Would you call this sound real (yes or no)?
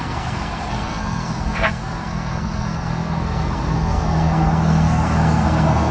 no